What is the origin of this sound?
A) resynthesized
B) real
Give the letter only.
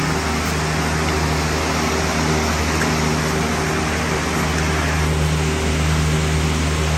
B